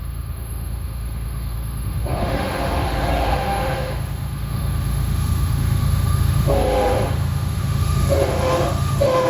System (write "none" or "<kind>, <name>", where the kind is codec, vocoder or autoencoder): autoencoder, DAC-VAE